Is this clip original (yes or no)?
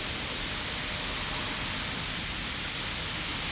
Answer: yes